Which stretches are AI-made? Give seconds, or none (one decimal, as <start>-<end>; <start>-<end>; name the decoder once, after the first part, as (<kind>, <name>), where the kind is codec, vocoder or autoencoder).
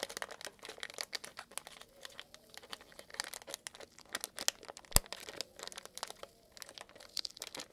none